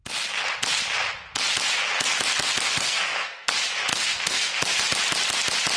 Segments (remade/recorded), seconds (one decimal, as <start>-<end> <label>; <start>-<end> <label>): 0.0-2.7 recorded; 2.7-3.5 remade; 3.5-3.9 recorded; 3.9-4.8 remade; 4.8-5.8 recorded